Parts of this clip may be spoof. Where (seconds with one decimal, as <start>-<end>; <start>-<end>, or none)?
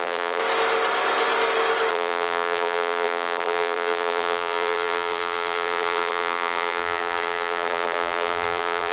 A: 0.0-0.4; 1.9-8.9